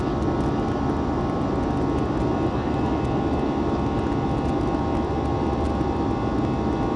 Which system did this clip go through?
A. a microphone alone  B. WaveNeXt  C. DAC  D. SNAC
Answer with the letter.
A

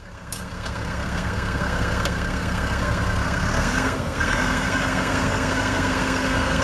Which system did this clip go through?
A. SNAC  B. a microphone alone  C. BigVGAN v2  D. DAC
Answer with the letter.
A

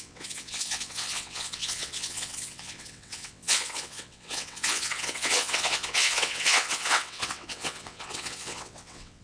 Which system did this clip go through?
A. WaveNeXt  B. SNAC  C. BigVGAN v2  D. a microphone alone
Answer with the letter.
A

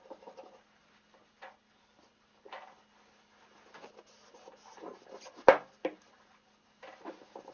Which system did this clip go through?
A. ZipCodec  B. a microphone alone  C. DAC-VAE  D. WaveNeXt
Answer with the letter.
B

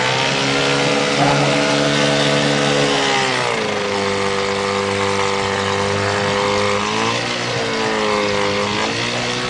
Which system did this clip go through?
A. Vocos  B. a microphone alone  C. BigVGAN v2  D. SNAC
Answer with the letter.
B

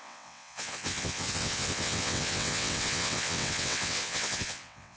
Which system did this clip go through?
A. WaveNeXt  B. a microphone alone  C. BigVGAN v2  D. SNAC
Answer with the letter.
A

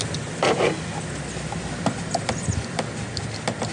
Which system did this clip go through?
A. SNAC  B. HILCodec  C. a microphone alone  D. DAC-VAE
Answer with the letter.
C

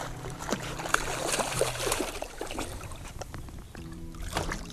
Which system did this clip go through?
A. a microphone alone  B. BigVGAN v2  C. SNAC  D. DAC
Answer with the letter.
B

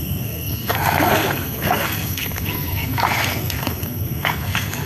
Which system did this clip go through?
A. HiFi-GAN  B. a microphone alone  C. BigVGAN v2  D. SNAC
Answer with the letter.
D